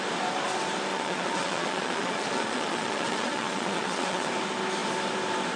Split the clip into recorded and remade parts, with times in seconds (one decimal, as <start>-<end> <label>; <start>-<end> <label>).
0.0-0.9 recorded; 0.9-4.3 remade; 4.3-5.6 recorded